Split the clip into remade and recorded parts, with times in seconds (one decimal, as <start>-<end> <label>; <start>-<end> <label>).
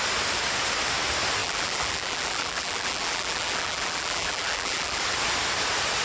0.0-1.4 recorded; 1.4-5.0 remade; 5.0-6.0 recorded